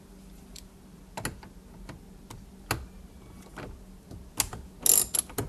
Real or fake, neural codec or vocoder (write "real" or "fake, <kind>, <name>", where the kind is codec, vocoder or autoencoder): real